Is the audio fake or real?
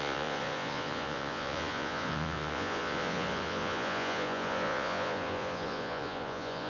fake